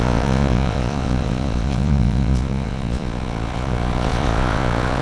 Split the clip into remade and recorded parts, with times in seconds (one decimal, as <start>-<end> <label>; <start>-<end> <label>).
0.0-5.0 remade